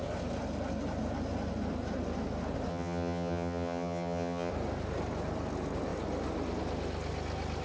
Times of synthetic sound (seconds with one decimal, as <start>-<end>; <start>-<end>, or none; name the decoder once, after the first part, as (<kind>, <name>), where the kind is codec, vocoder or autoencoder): 2.7-4.5 (vocoder, HiFi-GAN)